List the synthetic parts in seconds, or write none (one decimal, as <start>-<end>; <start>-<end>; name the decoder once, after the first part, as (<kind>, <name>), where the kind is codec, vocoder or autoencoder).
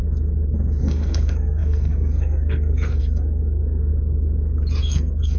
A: 0.8-3.9 (codec, SNAC); 4.8-5.4